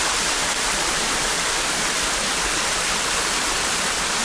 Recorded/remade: recorded